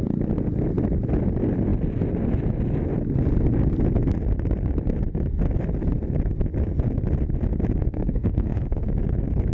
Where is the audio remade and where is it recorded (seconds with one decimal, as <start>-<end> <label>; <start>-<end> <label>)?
0.0-7.8 recorded; 7.8-8.9 remade; 8.9-9.5 recorded